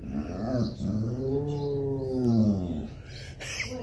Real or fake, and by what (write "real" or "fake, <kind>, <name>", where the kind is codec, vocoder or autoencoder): real